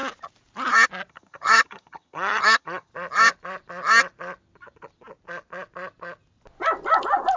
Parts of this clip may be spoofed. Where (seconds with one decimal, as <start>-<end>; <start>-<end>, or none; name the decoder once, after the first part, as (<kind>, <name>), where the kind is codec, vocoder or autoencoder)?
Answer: 1.1-2.9 (vocoder, HiFi-GAN)